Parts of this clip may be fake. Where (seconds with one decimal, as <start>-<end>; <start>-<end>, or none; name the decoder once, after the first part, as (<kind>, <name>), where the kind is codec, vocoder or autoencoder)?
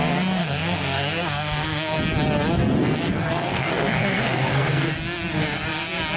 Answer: 0.4-2.0 (codec, SNAC); 3.1-4.9